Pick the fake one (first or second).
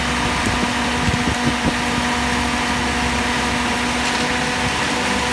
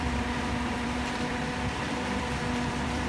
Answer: second